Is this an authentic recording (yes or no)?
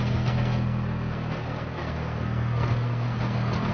no